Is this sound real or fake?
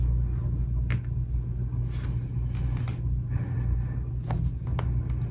real